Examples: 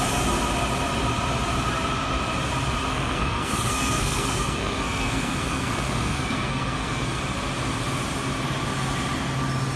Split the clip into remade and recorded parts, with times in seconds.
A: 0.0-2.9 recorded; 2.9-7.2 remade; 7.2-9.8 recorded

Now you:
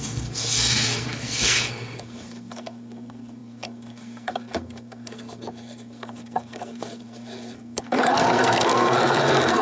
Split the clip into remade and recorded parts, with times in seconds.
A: 0.0-9.6 remade

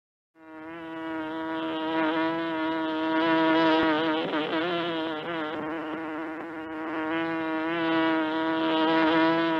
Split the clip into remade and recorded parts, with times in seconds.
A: 0.0-9.6 recorded

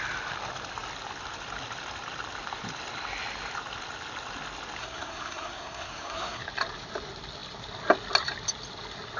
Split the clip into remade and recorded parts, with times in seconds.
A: 0.0-4.8 recorded; 4.8-6.4 remade; 6.4-9.2 recorded

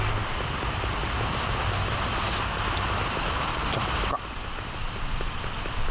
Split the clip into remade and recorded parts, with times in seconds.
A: 0.0-5.9 recorded

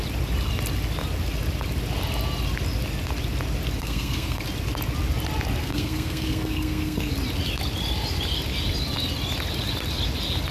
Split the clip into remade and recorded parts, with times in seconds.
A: 0.0-3.8 recorded; 3.8-4.4 remade; 4.4-5.6 recorded; 5.6-7.1 remade; 7.1-10.5 recorded

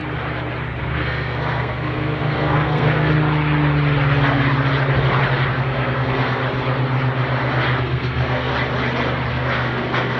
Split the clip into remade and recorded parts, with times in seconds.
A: 0.0-0.8 recorded; 0.8-3.1 remade; 3.1-5.5 recorded; 5.5-6.4 remade; 6.4-7.8 recorded; 7.8-8.5 remade; 8.5-9.3 recorded; 9.3-10.2 remade